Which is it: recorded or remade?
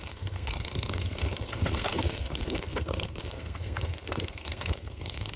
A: remade